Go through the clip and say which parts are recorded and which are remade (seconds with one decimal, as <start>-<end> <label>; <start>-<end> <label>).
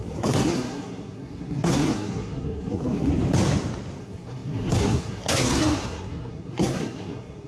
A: 0.0-3.1 remade; 3.1-4.0 recorded; 4.0-7.5 remade